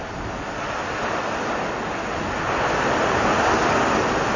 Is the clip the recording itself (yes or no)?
yes